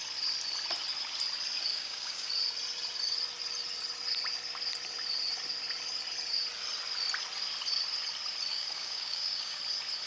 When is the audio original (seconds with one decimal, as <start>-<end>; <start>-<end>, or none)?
0.0-1.7; 2.3-8.5; 9.6-10.1